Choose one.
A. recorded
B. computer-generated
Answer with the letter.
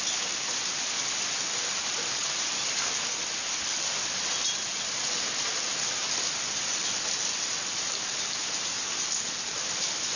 A